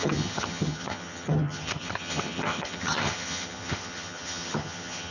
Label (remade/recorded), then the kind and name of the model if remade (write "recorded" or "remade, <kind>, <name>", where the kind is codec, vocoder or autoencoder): remade, vocoder, HiFi-GAN